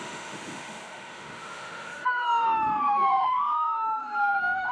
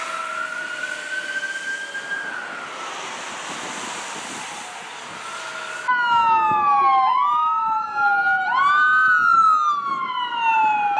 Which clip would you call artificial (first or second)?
first